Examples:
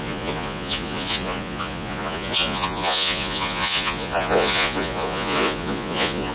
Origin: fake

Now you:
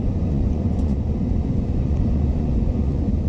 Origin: fake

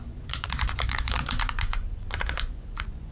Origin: fake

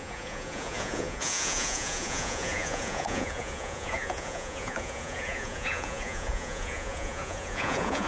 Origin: fake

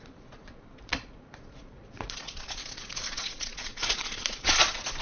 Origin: fake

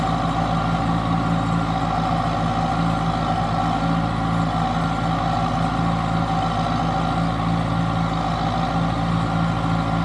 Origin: real